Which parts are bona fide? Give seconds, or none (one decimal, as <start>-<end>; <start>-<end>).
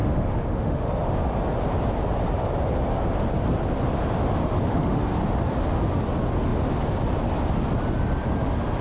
0.9-4.4; 5.2-8.8